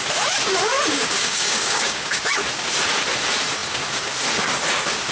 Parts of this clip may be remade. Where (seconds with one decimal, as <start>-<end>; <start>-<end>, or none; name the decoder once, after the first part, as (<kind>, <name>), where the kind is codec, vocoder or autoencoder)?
0.9-2.2 (codec, DAC)